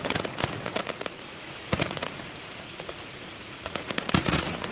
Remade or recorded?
remade